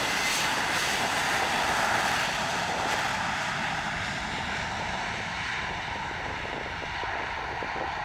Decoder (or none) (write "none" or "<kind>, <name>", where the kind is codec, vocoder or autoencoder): none